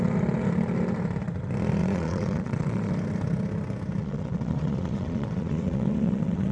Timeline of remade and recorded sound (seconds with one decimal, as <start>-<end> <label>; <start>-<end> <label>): 0.0-1.8 recorded; 1.8-2.9 remade; 2.9-4.0 recorded; 4.0-6.5 remade